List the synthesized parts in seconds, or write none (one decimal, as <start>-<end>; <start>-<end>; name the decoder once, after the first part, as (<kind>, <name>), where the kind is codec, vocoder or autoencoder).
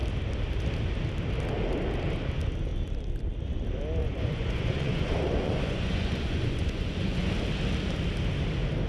4.0-7.3 (vocoder, Vocos)